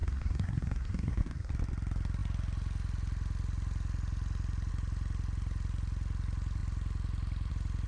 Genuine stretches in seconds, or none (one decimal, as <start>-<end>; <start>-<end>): 1.5-7.9